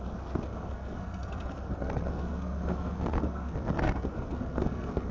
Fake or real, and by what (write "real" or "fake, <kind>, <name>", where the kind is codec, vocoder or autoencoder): fake, codec, SNAC